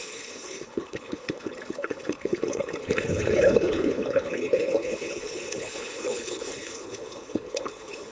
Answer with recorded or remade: remade